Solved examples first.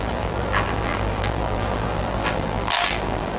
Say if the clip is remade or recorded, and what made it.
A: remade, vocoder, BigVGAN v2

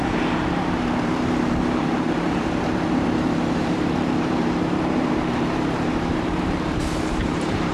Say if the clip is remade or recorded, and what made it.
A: remade, vocoder, BigVGAN v2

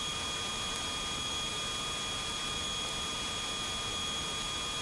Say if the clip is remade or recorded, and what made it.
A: remade, vocoder, BigVGAN v2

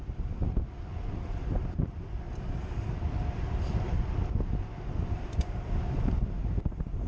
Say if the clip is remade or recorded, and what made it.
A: recorded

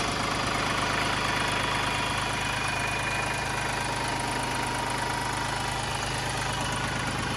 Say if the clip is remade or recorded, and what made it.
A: recorded